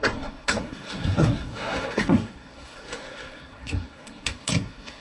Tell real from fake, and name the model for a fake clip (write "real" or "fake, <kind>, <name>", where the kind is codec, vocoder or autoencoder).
fake, codec, SNAC